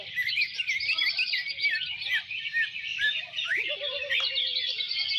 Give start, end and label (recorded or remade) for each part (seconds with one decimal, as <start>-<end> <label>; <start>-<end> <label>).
0.0-1.0 recorded; 1.0-2.2 remade; 2.2-2.9 recorded; 2.9-4.4 remade; 4.4-5.2 recorded